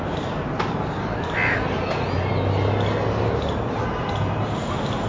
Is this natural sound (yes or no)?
yes